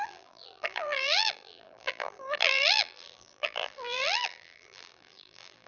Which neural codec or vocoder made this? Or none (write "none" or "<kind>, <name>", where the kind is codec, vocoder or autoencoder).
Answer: vocoder, BigVGAN v2